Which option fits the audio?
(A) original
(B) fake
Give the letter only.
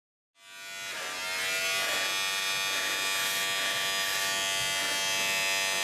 A